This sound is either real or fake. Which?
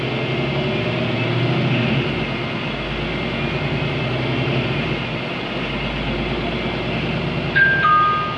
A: real